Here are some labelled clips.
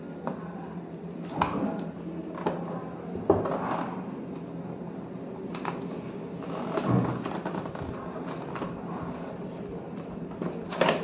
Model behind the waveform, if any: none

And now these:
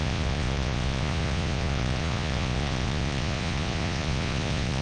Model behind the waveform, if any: vocoder, Vocos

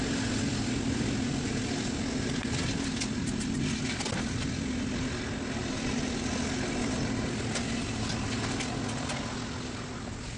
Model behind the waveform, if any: none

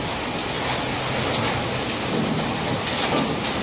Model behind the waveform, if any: none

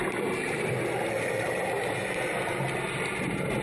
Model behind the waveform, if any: none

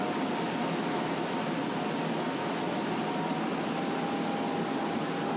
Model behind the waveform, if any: none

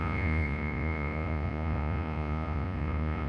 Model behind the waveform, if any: vocoder, Vocos